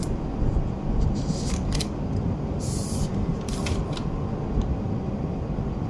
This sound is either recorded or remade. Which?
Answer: recorded